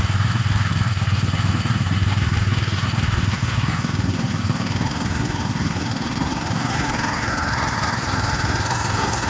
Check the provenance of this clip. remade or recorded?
remade